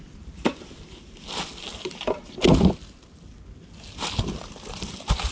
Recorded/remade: recorded